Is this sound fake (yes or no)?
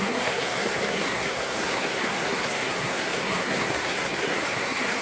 yes